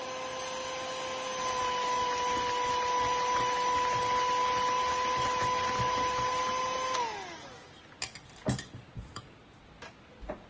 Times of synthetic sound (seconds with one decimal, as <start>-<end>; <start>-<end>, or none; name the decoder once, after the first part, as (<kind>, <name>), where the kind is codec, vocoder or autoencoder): none